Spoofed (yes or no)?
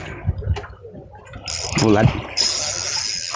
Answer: no